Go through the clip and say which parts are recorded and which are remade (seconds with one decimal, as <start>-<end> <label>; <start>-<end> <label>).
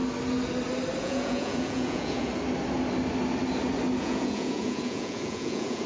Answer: 0.0-1.0 recorded; 1.0-2.3 remade; 2.3-4.0 recorded; 4.0-5.9 remade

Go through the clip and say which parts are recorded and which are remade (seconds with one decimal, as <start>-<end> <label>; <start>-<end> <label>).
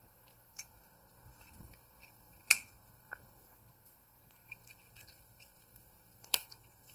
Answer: 0.0-6.9 remade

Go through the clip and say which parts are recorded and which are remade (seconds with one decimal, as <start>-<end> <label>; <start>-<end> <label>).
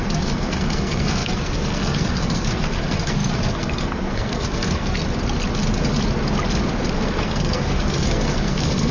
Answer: 0.0-5.0 remade; 5.0-6.9 recorded; 6.9-8.9 remade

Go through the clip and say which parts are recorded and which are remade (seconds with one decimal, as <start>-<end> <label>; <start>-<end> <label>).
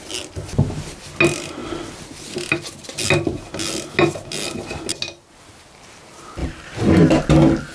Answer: 0.0-7.7 recorded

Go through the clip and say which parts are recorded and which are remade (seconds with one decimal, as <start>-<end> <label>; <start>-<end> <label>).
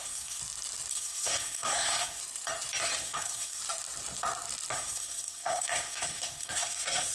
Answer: 0.0-0.4 remade; 0.4-0.9 recorded; 0.9-2.2 remade; 2.2-3.0 recorded; 3.0-3.6 remade; 3.6-4.7 recorded; 4.7-7.1 remade